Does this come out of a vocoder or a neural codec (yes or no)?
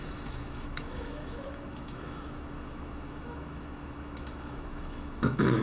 yes